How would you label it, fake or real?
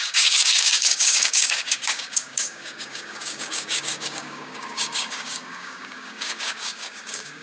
fake